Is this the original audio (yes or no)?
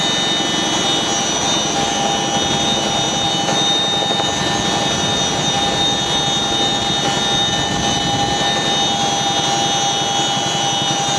yes